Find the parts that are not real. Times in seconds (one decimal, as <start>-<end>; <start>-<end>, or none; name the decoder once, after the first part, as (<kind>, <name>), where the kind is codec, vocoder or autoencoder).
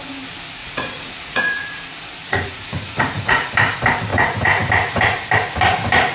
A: 0.6-1.8 (vocoder, Vocos); 2.2-3.5; 4.1-4.7